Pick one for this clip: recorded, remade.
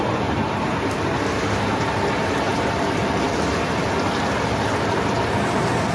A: remade